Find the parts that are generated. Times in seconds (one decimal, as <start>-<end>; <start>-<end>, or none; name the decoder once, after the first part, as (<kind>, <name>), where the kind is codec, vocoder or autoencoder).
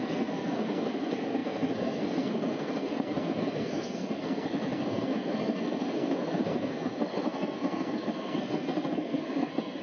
0.0-9.8 (codec, SNAC)